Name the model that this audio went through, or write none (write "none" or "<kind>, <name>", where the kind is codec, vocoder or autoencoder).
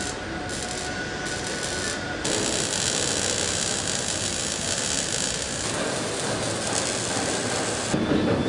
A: none